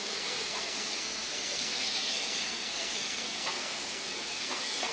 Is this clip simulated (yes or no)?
yes